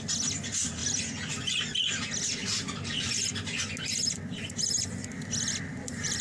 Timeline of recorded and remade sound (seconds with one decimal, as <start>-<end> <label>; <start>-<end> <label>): 0.0-5.0 recorded; 5.0-6.2 remade